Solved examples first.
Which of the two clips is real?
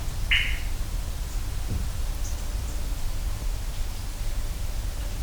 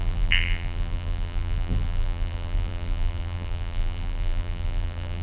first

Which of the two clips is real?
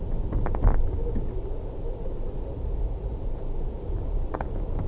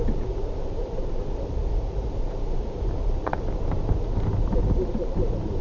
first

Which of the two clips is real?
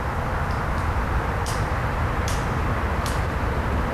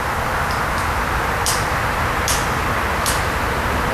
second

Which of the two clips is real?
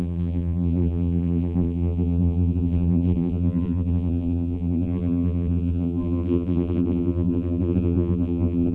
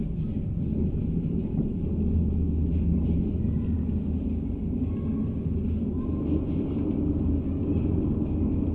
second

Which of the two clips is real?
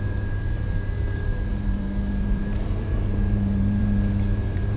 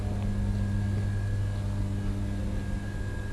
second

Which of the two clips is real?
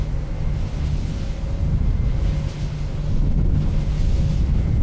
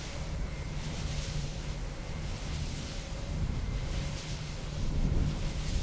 first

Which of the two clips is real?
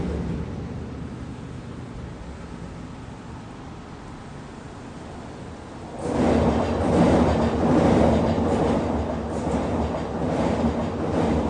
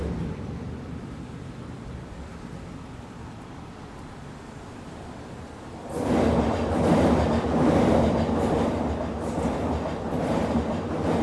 first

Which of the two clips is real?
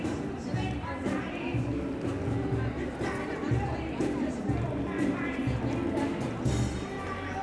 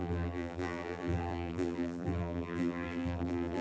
first